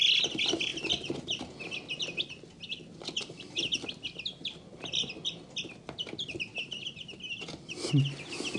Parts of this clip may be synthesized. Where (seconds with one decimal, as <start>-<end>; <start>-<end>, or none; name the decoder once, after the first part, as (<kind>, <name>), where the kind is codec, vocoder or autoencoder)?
none